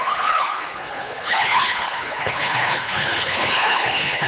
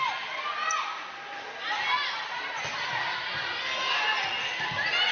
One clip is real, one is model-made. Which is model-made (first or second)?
first